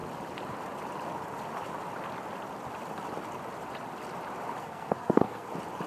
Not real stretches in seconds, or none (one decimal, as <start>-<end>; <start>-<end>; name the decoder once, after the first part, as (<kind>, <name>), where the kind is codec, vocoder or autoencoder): 4.6-5.5 (codec, SNAC)